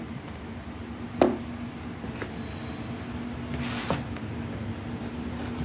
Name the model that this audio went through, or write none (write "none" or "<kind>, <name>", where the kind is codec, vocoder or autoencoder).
none